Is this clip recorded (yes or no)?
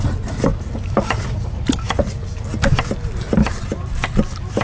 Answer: yes